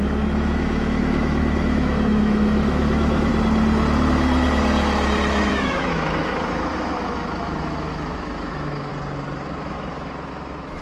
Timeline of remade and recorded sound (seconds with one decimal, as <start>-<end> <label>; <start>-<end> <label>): 0.0-3.3 remade; 3.3-5.5 recorded; 5.5-8.9 remade; 8.9-9.6 recorded; 9.6-10.8 remade